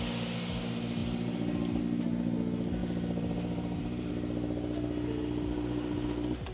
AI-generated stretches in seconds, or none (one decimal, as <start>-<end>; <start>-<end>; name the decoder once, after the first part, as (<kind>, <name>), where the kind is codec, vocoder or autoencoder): 2.8-4.1 (vocoder, BigVGAN v2)